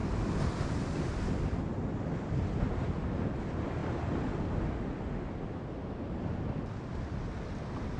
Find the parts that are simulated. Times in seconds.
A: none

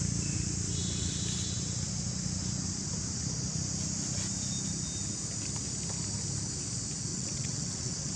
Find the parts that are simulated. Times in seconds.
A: 7.1-8.2

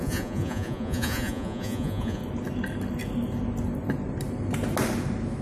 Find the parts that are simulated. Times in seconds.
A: 0.0-2.2

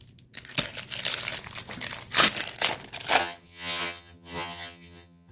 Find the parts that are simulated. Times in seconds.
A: 3.2-5.3

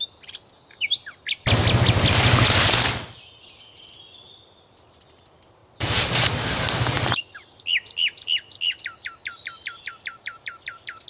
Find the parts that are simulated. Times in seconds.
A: 5.6-6.4

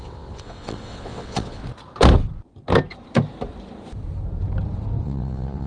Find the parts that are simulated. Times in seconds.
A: 0.0-1.6; 5.0-5.7